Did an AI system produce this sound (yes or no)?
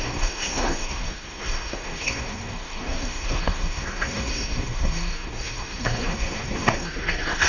yes